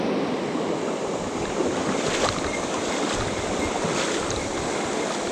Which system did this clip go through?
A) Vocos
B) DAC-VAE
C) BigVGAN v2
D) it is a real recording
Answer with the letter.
D